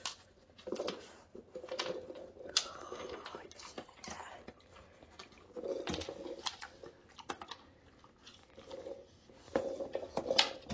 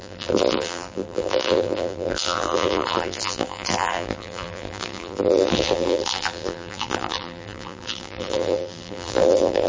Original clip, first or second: first